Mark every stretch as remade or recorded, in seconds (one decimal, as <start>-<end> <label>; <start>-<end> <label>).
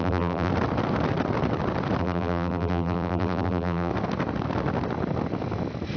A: 0.0-0.5 remade; 0.5-2.0 recorded; 2.0-3.9 remade; 3.9-6.0 recorded